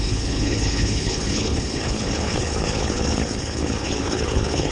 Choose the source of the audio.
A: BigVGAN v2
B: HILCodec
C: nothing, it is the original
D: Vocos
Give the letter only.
B